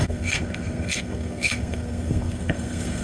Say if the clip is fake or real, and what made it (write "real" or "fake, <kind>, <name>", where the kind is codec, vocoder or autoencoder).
fake, codec, SNAC